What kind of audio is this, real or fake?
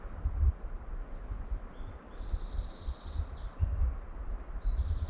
real